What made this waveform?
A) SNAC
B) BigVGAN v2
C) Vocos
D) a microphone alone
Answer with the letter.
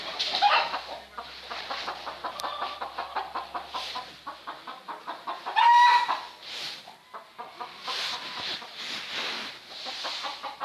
D